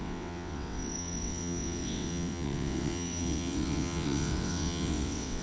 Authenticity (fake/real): fake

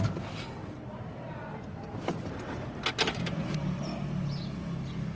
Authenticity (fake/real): real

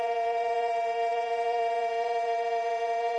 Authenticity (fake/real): fake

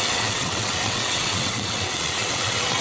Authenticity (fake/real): fake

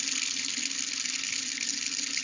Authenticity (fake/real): real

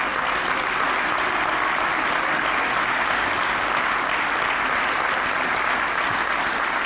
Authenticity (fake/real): real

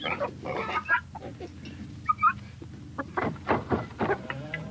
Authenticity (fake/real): real